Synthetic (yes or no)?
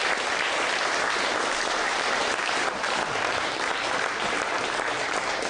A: no